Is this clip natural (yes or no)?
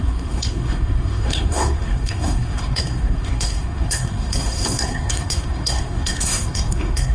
no